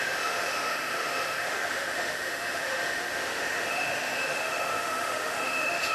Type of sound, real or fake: fake